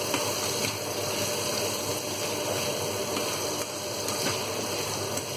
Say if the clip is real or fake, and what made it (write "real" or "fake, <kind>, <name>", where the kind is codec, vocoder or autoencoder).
real